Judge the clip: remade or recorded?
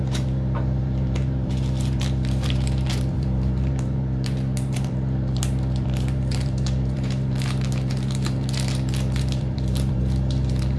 remade